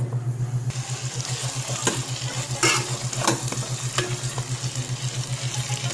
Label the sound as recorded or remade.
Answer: recorded